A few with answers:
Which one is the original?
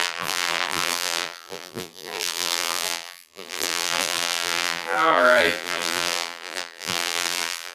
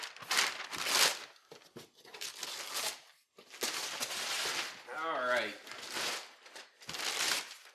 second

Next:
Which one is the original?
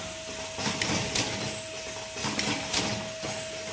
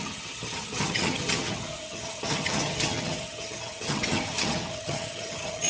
first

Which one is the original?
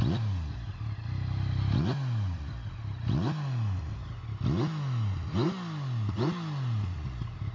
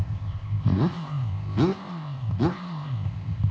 first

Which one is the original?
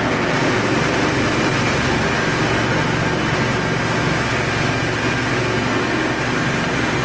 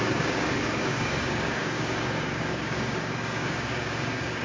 first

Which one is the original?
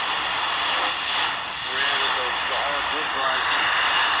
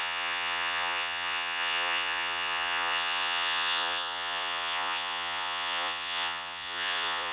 first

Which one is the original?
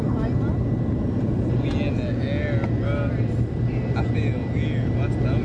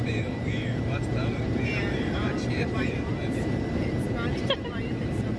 first